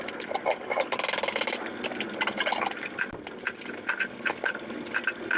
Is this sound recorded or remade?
recorded